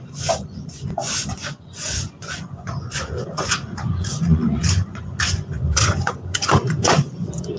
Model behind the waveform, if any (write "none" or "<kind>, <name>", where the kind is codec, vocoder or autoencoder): vocoder, Vocos